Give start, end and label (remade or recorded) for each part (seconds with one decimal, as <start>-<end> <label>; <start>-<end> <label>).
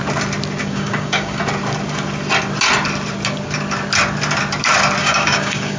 0.0-0.6 recorded; 0.6-1.4 remade; 1.4-5.0 recorded; 5.0-5.8 remade